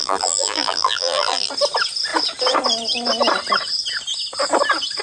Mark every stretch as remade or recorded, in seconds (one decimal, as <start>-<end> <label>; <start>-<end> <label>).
0.0-1.5 remade; 1.5-5.0 recorded